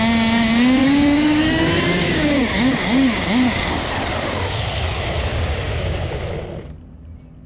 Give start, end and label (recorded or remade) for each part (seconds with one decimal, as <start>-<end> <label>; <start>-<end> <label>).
0.0-0.8 recorded; 0.8-3.7 remade; 3.7-5.3 recorded; 5.3-6.2 remade; 6.2-7.5 recorded